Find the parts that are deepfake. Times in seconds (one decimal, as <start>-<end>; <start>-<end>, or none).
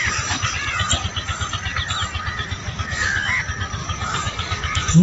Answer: 2.6-3.4; 3.8-5.0